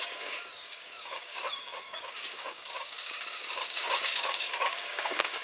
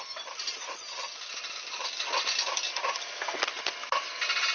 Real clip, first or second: second